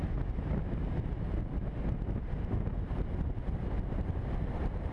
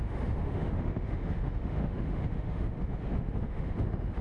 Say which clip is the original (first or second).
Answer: first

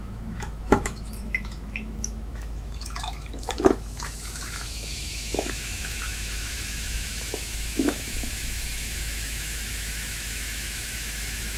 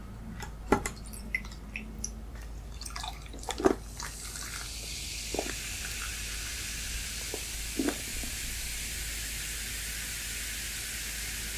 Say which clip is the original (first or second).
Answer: second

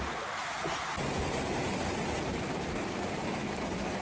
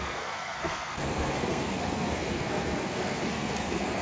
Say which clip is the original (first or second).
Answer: first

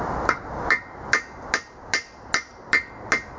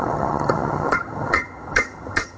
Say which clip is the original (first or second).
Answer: first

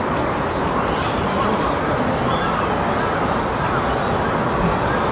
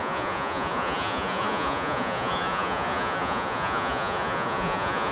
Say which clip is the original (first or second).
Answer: first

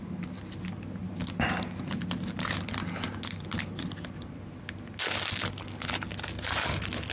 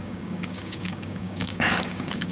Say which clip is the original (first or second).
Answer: first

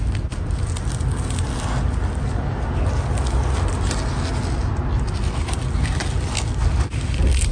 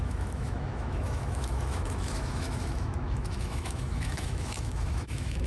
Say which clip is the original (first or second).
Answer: first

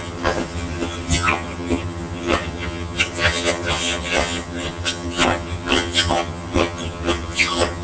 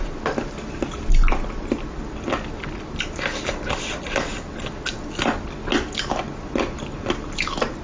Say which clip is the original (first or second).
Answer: second